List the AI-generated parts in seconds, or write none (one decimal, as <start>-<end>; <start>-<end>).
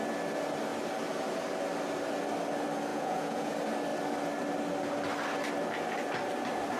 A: 2.9-3.5